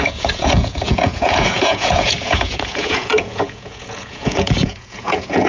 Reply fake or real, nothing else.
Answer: fake